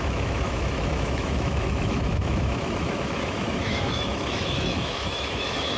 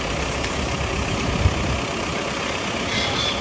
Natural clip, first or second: second